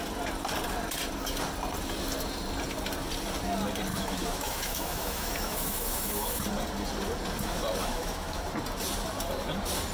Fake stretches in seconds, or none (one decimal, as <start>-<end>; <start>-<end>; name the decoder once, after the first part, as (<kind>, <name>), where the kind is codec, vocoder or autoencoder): 3.9-6.4 (autoencoder, DAC-VAE); 7.8-8.4